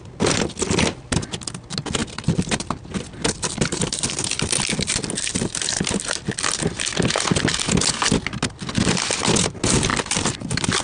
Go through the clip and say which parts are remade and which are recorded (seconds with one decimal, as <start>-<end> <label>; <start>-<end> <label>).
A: 0.0-2.0 recorded; 2.0-6.0 remade; 6.0-9.9 recorded; 9.9-10.4 remade; 10.4-10.8 recorded